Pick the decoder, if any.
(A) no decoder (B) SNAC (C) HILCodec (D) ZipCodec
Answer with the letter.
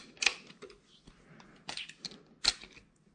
A